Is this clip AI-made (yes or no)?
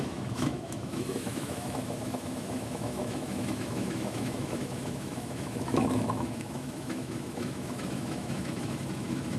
yes